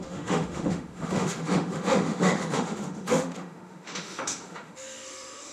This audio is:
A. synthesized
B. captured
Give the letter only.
A